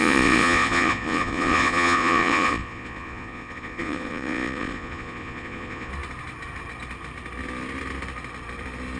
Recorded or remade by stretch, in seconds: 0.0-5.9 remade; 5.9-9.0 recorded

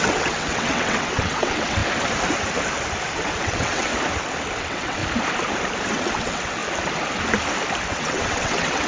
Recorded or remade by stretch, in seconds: 0.0-1.8 remade; 1.8-3.4 recorded; 3.4-3.9 remade; 3.9-4.6 recorded; 4.6-5.0 remade; 5.0-5.9 recorded; 5.9-6.6 remade; 6.6-7.9 recorded; 7.9-8.9 remade

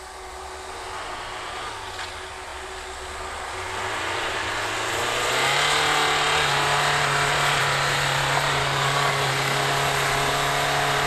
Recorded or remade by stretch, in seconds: 0.0-8.6 recorded; 8.6-9.1 remade; 9.1-11.1 recorded

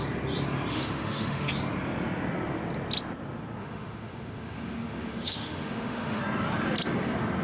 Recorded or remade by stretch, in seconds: 0.0-0.7 recorded; 0.7-1.5 remade; 1.5-3.6 recorded; 3.6-6.2 remade; 6.2-7.4 recorded

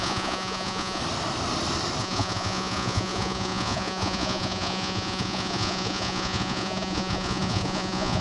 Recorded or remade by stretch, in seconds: 0.0-1.0 remade; 1.0-2.0 recorded; 2.0-8.2 remade

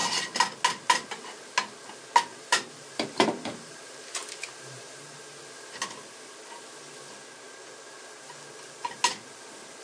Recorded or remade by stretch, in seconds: 0.0-2.3 recorded; 2.3-5.0 remade; 5.0-9.8 recorded

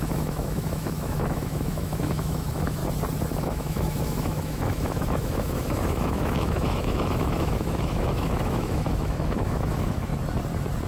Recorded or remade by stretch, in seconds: 0.0-2.8 remade; 2.8-3.4 recorded; 3.4-10.1 remade; 10.1-10.9 recorded

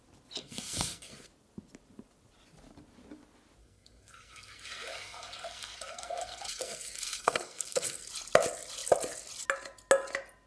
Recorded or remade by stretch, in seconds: 0.0-0.4 recorded; 0.4-1.3 remade; 1.3-3.6 recorded; 3.6-8.1 remade; 8.1-10.5 recorded